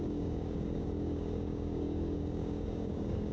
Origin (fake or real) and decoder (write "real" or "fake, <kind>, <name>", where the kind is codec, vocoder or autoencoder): fake, codec, DAC